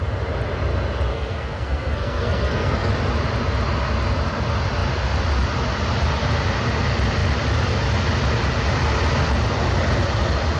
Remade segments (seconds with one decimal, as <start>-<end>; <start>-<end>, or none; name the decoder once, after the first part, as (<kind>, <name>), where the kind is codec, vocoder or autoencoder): 1.1-2.9 (codec, SNAC)